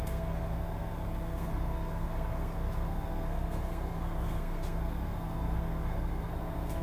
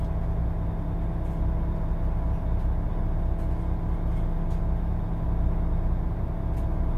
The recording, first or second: second